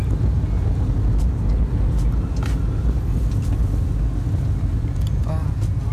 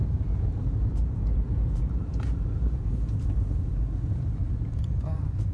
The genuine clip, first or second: first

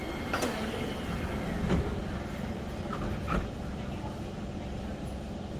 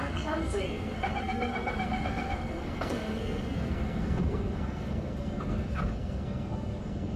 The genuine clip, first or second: first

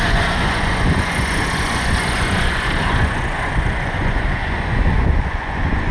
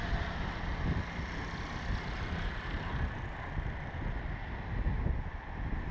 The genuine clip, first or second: second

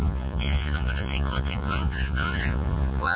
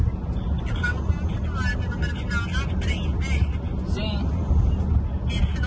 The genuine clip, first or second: second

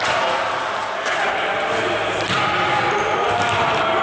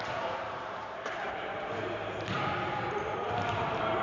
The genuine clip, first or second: first